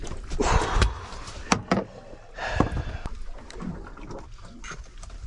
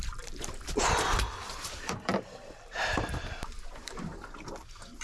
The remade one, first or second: second